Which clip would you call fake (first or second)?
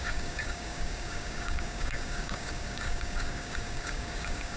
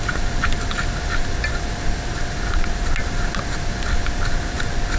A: first